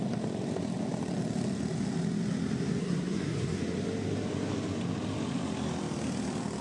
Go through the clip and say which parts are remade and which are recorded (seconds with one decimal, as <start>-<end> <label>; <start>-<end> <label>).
0.0-2.8 recorded; 2.8-3.6 remade; 3.6-6.6 recorded